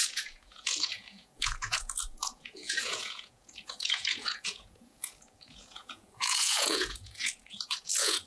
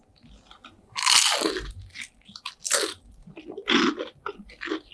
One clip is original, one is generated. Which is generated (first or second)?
first